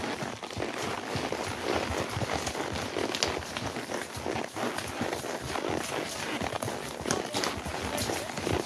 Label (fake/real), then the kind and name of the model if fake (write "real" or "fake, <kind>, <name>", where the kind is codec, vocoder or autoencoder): real